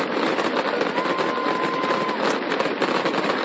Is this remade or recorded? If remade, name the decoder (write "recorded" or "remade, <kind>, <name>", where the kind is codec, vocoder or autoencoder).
recorded